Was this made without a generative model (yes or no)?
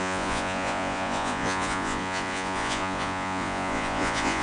no